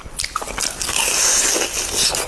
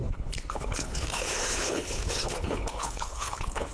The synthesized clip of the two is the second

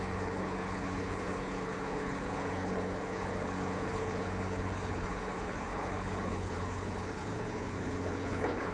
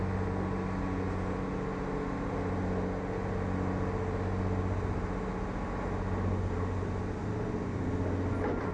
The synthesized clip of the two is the first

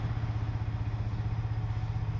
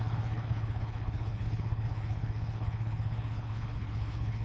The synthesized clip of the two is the second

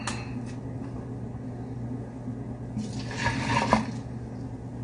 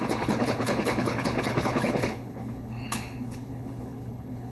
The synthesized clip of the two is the second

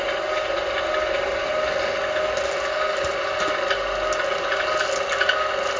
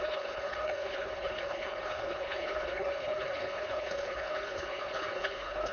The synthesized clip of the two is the second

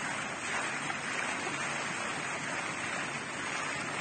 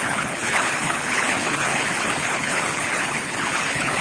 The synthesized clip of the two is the second